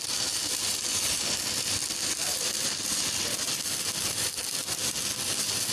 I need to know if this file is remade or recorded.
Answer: remade